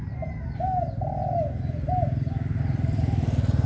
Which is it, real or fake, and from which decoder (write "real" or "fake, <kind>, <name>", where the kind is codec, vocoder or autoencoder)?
real